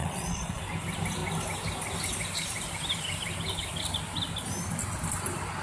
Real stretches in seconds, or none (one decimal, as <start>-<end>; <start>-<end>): 0.6-5.6